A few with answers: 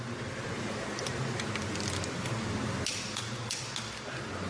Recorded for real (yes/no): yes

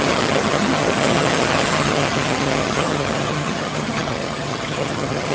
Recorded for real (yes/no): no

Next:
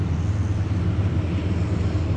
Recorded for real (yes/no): yes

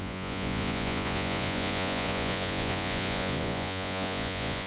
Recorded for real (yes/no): no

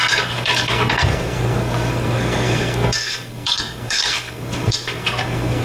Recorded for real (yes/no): no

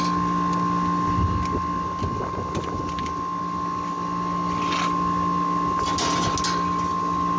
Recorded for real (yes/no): yes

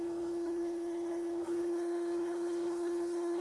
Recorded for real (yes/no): no